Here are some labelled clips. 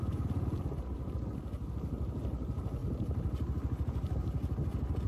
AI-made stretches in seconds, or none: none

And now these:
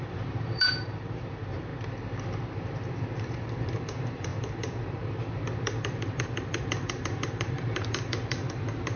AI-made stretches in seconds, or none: 0.0-1.7 (vocoder, BigVGAN v2); 3.2-9.0

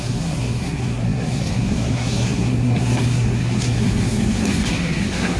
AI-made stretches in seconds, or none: 0.0-5.4 (codec, SNAC)

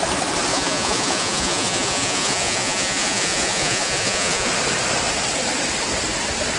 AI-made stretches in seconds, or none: 0.5-4.5 (vocoder, Vocos)

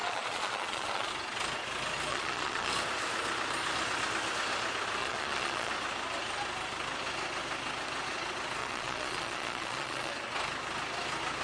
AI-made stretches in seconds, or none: 0.0-1.1 (vocoder, Vocos); 2.1-2.7; 5.0-5.7; 8.6-10.1

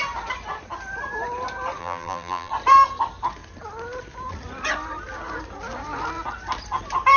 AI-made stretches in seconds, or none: 1.8-2.5 (vocoder, BigVGAN v2)

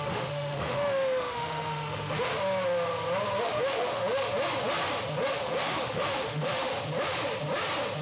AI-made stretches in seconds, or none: 0.0-2.3 (autoencoder, DAC-VAE); 3.4-4.0; 5.3-6.7

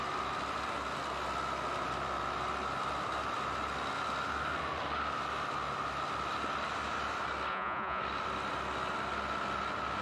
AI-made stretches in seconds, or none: 7.5-8.0 (vocoder, Vocos)